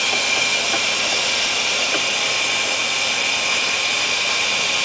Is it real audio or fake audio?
real